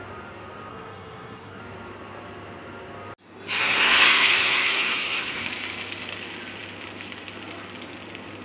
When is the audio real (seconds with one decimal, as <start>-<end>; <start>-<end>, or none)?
0.0-0.7; 1.6-3.6; 5.5-8.4